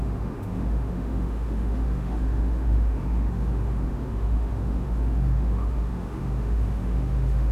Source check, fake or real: fake